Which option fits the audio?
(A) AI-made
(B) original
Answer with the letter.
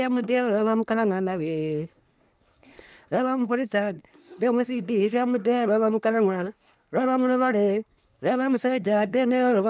A